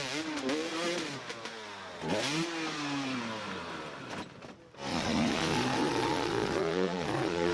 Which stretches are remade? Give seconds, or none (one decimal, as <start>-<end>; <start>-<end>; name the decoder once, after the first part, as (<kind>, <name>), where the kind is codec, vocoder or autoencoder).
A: 4.9-7.5 (vocoder, Vocos)